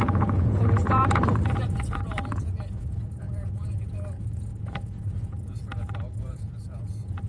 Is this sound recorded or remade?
remade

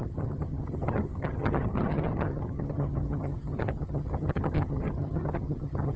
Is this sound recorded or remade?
remade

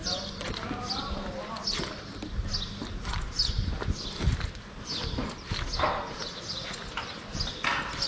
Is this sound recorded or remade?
recorded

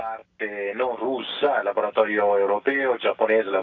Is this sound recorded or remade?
recorded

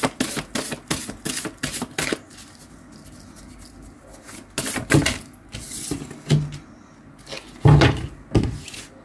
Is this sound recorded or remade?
recorded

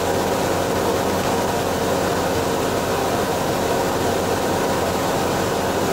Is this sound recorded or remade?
recorded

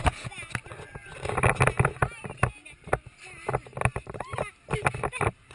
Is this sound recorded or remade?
recorded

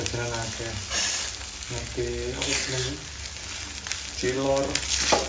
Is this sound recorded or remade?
recorded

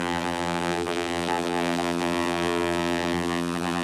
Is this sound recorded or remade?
remade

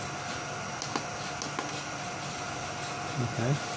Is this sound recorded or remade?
recorded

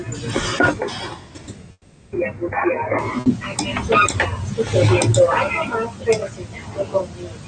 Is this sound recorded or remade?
recorded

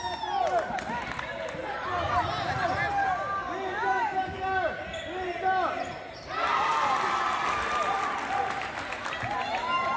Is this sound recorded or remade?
recorded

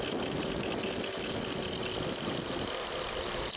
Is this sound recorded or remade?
recorded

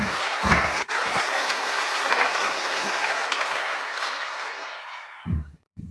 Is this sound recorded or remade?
remade